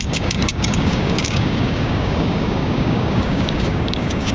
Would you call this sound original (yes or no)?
no